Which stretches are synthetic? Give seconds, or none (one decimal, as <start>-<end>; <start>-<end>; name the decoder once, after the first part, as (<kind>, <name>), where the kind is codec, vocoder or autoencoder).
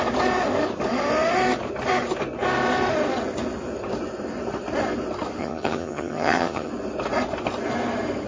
5.4-6.7 (vocoder, HiFi-GAN)